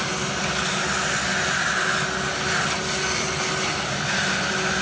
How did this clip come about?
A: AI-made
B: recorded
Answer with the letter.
B